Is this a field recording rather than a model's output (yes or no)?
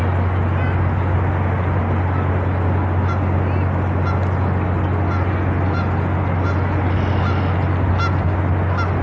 yes